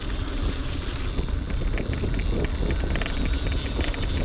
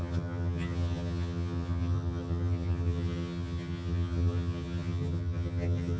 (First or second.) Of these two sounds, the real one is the first